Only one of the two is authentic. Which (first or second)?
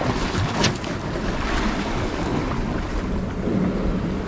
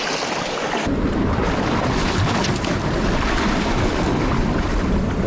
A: first